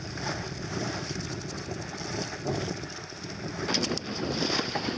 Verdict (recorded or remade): recorded